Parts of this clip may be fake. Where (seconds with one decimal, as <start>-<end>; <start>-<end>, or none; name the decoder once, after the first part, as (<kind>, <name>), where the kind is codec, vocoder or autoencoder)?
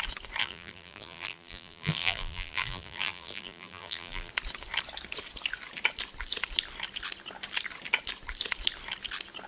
0.4-4.3 (vocoder, BigVGAN v2)